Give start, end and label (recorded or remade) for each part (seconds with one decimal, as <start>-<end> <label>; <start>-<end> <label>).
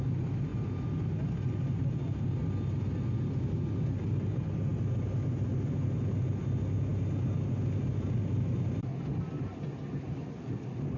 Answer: 0.0-11.0 recorded